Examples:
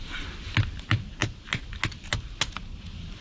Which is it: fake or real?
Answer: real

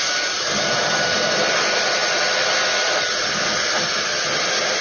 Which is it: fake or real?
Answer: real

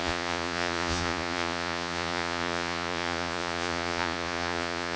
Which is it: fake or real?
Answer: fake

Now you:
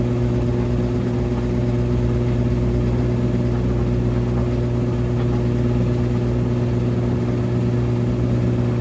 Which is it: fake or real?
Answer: real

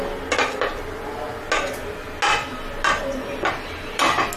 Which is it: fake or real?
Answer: real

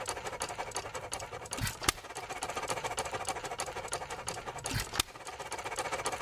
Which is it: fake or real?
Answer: real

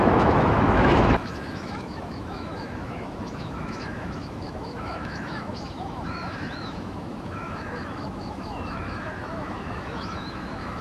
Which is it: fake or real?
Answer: fake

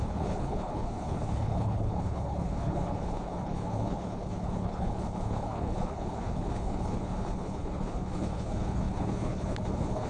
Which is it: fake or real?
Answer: fake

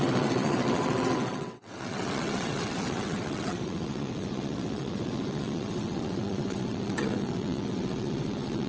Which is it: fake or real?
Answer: fake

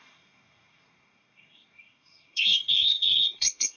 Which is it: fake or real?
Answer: fake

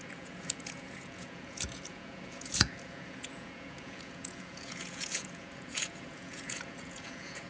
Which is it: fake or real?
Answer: fake